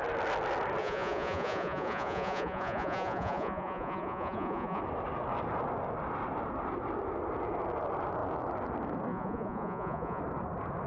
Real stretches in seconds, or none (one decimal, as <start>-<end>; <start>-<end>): 0.0-0.8; 4.8-9.1; 10.2-10.9